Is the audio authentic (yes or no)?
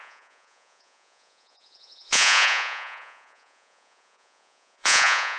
no